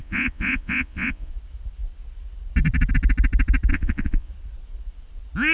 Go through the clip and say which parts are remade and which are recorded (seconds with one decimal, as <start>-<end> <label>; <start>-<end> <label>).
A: 0.0-1.3 remade; 1.3-3.7 recorded; 3.7-4.3 remade; 4.3-5.5 recorded